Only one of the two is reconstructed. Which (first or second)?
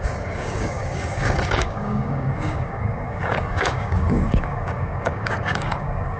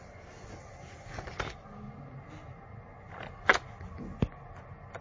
first